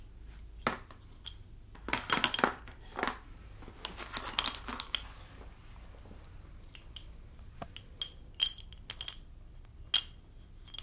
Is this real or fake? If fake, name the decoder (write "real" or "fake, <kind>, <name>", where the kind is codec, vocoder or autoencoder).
real